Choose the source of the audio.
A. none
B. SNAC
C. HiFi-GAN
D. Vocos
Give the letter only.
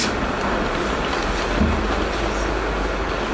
A